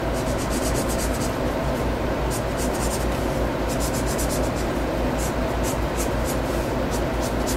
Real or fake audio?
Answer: real